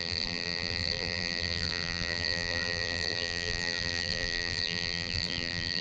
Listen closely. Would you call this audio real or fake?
fake